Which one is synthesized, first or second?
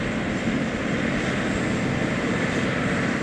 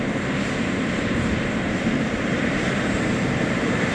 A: second